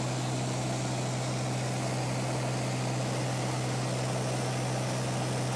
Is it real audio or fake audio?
real